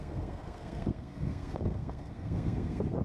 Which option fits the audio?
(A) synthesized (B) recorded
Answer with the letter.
A